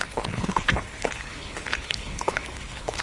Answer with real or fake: fake